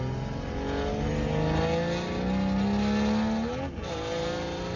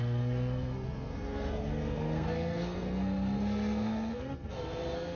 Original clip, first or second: first